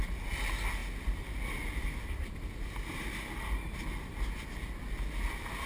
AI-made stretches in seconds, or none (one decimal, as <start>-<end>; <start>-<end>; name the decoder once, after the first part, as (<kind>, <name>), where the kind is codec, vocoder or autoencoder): none